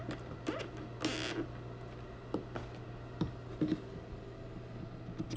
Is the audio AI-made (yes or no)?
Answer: no